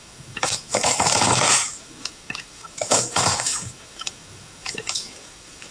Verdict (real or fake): fake